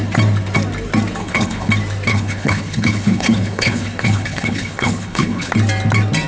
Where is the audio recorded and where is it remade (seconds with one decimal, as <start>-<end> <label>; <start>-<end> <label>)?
0.0-1.2 recorded; 1.2-1.7 remade; 1.7-2.1 recorded; 2.1-5.5 remade; 5.5-6.3 recorded